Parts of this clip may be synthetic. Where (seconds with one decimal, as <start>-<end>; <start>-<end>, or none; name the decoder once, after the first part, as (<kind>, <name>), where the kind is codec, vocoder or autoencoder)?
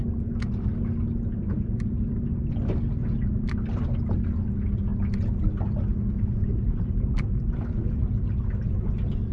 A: 3.0-3.8 (vocoder, BigVGAN v2)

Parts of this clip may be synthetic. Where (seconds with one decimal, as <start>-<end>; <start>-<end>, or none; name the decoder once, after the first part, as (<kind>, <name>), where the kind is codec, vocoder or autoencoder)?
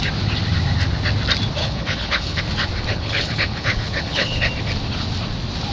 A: 1.6-2.4 (codec, HILCodec); 2.9-4.5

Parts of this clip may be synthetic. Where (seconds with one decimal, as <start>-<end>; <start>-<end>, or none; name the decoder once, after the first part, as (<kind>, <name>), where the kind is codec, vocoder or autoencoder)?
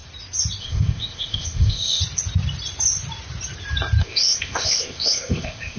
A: 0.6-2.0 (codec, ZipCodec); 4.0-5.8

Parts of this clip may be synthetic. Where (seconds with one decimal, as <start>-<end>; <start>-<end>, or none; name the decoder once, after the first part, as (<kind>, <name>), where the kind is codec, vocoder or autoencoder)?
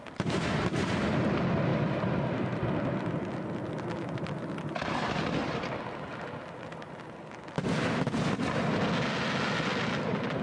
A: none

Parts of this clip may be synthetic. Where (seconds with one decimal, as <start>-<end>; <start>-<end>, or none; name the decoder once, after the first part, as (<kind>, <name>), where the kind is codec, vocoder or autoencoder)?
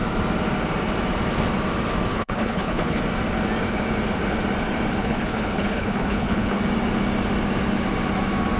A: 2.1-3.0 (codec, HILCodec); 5.0-6.6